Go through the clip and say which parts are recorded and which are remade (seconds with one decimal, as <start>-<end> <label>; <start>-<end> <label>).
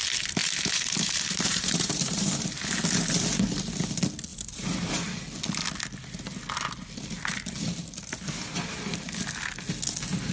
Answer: 0.0-0.4 recorded; 0.4-2.3 remade; 2.3-4.3 recorded; 4.3-4.9 remade; 4.9-10.3 recorded